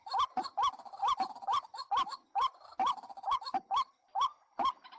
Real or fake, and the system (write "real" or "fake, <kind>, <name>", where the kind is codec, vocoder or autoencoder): real